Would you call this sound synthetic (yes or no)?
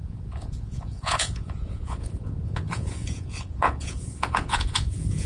yes